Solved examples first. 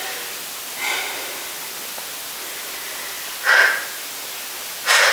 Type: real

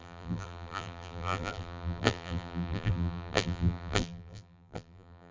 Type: fake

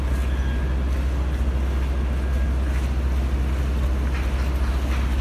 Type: real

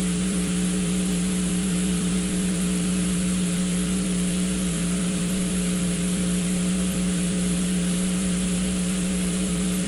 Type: fake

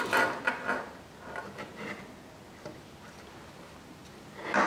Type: real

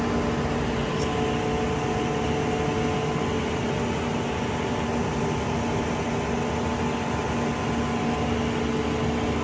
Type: real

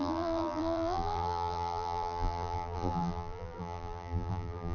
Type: fake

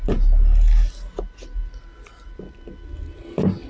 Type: real